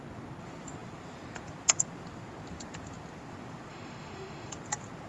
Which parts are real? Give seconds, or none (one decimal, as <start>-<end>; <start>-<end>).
0.0-3.7; 4.5-5.1